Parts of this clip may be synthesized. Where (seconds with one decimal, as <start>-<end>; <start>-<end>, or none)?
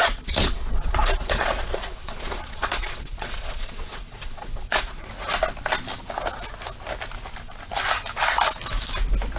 0.0-5.1